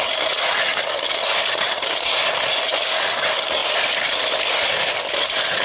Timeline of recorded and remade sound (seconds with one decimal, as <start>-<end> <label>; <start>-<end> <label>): 0.0-5.6 recorded